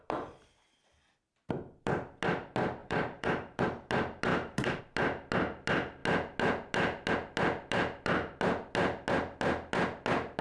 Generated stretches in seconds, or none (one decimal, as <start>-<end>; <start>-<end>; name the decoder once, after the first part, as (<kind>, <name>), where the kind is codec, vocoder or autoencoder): 2.8-3.6 (vocoder, BigVGAN v2); 4.3-4.8

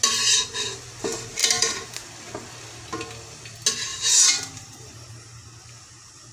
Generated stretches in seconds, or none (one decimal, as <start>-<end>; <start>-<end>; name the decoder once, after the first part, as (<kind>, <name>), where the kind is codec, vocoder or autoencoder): 1.4-1.9 (vocoder, BigVGAN v2); 3.9-5.1

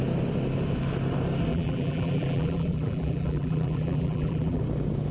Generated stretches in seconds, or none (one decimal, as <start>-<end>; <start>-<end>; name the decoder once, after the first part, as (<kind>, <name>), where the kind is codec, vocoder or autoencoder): 1.5-4.6 (vocoder, BigVGAN v2)

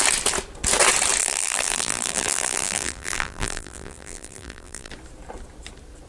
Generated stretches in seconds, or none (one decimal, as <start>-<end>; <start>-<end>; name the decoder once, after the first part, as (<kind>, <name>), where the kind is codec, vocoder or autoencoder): 1.2-4.9 (vocoder, BigVGAN v2)

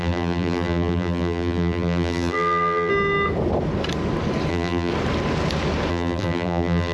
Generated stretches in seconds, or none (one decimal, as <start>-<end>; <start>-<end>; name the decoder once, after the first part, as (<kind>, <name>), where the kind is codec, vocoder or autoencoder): 0.0-2.9 (vocoder, BigVGAN v2); 4.5-4.9; 5.9-6.9

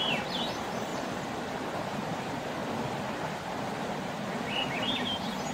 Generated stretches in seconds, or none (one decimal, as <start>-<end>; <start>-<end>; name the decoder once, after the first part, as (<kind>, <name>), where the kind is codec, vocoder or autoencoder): 0.0-0.9 (vocoder, BigVGAN v2); 1.9-2.6; 3.8-5.5